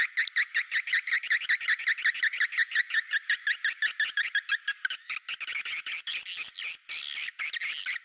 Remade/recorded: recorded